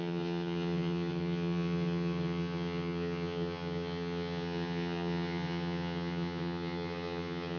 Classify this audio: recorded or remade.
remade